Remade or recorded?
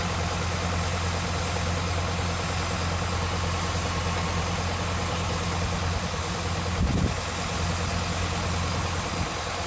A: recorded